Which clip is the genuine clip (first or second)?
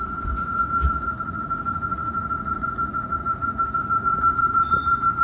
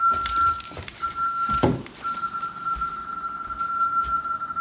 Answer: second